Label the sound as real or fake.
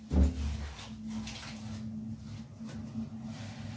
real